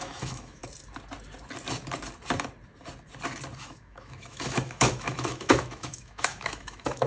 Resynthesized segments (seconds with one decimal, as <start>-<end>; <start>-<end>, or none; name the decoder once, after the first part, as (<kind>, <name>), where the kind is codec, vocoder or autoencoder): 0.0-0.6 (autoencoder, DAC-VAE); 3.6-7.1